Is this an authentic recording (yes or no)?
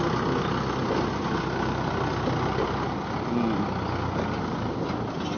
yes